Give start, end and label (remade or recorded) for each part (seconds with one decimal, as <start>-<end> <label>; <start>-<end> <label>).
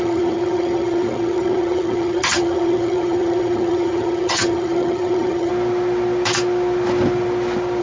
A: 0.0-5.5 remade; 5.5-7.8 recorded